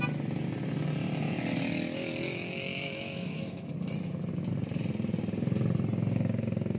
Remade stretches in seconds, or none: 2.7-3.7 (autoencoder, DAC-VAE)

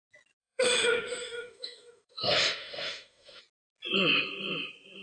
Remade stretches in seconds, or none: 0.4-3.4 (autoencoder, DAC-VAE)